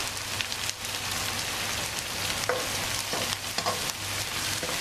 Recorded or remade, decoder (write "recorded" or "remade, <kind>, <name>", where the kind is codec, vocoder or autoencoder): recorded